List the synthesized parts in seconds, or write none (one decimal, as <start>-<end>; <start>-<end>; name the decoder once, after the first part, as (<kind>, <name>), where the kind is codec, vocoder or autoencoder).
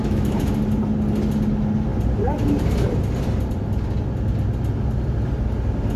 0.0-0.5 (autoencoder, DAC-VAE)